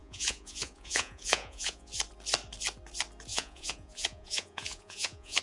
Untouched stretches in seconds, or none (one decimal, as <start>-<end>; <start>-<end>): 1.9-3.3